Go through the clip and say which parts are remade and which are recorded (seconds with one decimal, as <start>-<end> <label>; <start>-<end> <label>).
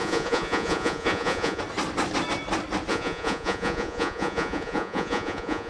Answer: 0.0-1.6 remade; 1.6-2.9 recorded; 2.9-5.7 remade